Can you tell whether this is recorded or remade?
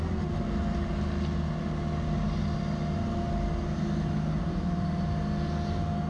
recorded